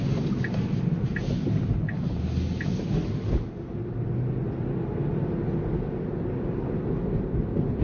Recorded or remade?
recorded